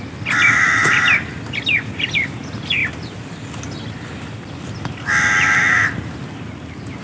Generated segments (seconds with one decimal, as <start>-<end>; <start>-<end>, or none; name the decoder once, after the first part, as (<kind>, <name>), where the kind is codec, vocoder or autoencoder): 0.8-1.4 (vocoder, BigVGAN v2)